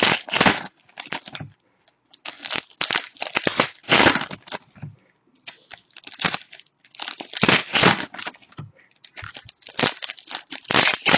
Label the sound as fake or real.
real